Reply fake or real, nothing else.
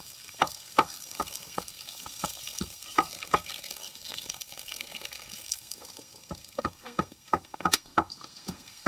fake